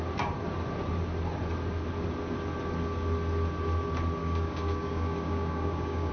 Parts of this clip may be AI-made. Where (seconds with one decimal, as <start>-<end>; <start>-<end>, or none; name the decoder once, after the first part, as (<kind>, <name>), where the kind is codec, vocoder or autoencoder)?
4.2-6.1 (codec, DAC)